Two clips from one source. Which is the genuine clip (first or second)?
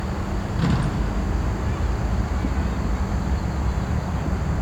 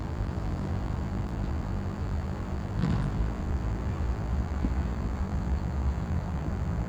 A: first